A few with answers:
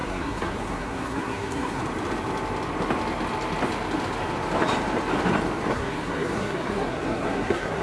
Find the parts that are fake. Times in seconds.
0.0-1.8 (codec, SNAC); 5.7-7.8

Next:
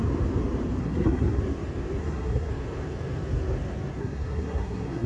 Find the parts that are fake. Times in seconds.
0.8-1.4 (codec, SNAC); 2.0-2.5; 4.0-5.1

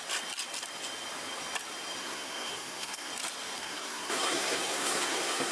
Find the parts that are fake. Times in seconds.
2.0-3.1 (codec, SNAC); 3.6-5.5

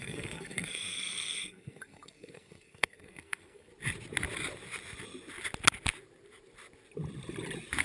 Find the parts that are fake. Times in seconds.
0.0-3.7 (codec, SNAC)

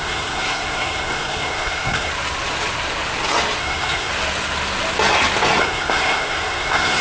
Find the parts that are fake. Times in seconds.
0.0-2.1 (codec, SNAC); 3.6-4.1; 5.6-7.0

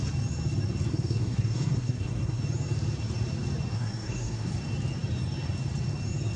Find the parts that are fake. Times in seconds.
0.9-2.4 (codec, SNAC); 3.7-4.5

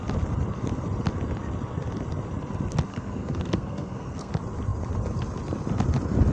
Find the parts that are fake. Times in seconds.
2.9-4.3 (codec, SNAC)

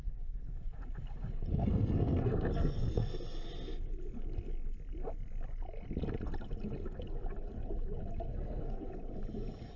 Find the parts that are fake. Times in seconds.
1.5-3.0 (codec, SNAC); 8.3-8.9